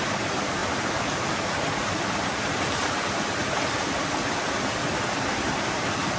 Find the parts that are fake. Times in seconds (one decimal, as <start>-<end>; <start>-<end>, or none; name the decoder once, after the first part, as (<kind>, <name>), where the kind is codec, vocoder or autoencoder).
none